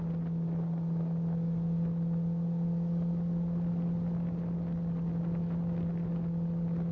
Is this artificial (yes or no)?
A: no